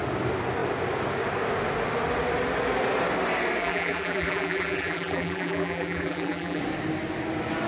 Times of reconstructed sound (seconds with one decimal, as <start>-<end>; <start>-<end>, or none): 3.6-6.6